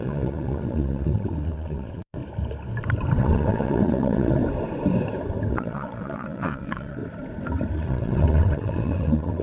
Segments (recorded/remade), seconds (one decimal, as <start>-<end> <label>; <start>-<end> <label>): 0.0-2.2 remade; 2.2-3.2 recorded; 3.2-4.4 remade; 4.4-5.5 recorded; 5.5-7.0 remade; 7.0-7.7 recorded; 7.7-9.4 remade